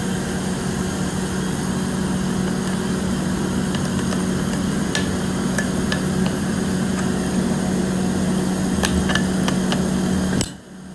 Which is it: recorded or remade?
recorded